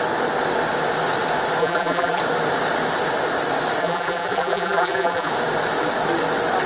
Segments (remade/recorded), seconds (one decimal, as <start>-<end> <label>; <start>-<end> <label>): 0.0-1.6 recorded; 1.6-2.2 remade; 2.2-3.8 recorded; 3.8-5.3 remade; 5.3-6.7 recorded

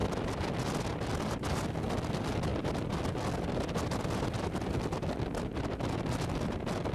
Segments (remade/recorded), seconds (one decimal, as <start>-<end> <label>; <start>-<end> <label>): 0.0-6.9 recorded